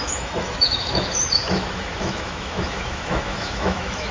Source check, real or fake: fake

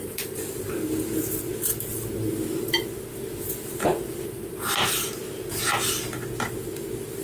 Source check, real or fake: real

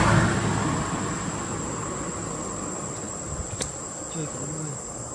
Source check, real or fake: real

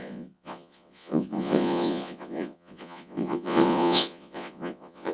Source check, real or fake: fake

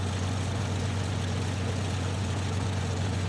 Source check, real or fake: fake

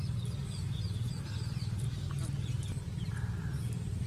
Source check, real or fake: real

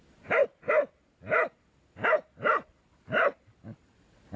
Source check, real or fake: real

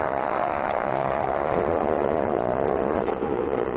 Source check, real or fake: fake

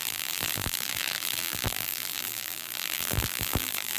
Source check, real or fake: fake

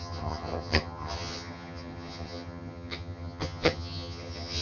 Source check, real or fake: fake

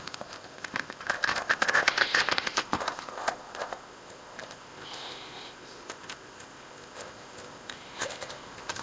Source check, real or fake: fake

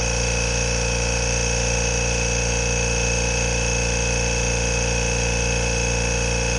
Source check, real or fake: fake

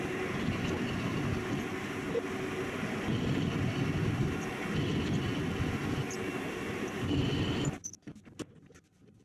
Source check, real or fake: real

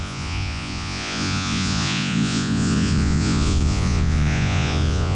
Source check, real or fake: fake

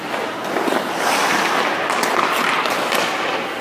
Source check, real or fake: real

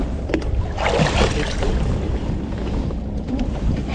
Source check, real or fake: fake